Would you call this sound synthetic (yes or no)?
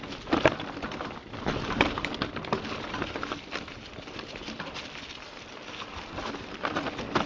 no